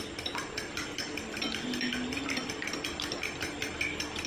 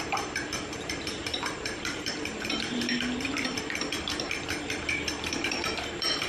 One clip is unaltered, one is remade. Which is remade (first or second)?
second